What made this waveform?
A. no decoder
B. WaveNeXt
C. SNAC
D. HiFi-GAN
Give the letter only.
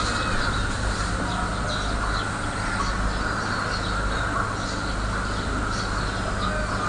A